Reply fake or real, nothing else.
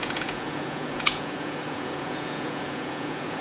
fake